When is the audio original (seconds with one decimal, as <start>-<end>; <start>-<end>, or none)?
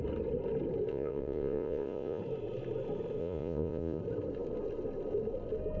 0.0-0.9; 2.2-3.2; 4.0-5.8